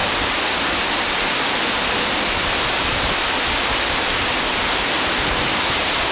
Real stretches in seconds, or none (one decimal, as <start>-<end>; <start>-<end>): 0.0-6.1